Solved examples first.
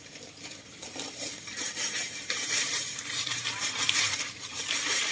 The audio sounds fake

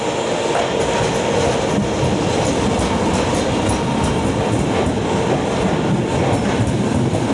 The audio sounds real